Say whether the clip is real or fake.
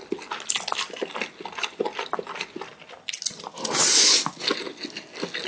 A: real